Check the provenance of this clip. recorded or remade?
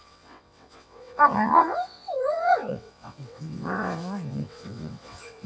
remade